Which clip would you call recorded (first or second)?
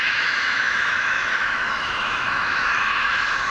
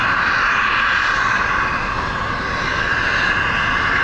second